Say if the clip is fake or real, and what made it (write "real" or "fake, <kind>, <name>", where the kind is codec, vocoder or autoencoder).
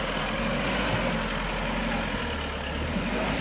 real